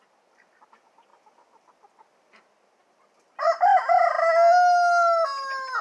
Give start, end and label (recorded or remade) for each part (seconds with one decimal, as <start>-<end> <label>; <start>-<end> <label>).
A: 0.0-5.8 recorded